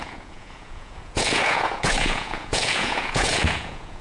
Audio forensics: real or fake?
fake